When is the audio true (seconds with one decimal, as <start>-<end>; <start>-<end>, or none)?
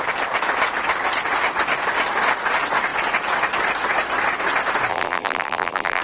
0.0-4.9